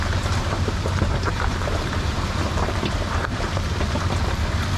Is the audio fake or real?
fake